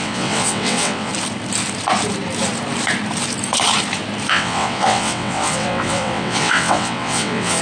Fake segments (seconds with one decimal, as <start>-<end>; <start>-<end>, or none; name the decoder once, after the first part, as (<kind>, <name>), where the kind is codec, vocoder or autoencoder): 0.0-1.1 (vocoder, WaveNeXt); 4.3-7.6